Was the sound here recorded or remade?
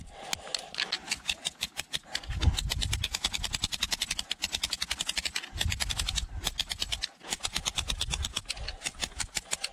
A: recorded